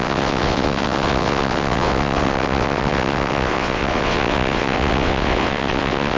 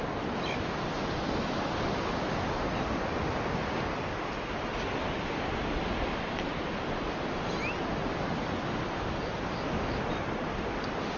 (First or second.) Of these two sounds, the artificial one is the first